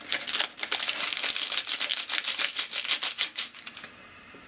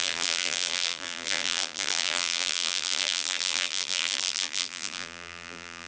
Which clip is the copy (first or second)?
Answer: second